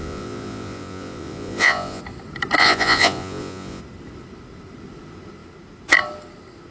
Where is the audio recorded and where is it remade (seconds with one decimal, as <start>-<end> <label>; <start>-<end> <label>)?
0.0-2.0 remade; 2.0-2.6 recorded; 2.6-3.8 remade; 3.8-6.7 recorded